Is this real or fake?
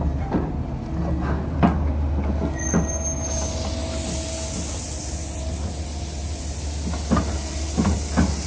real